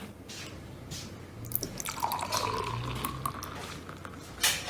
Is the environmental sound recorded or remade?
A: recorded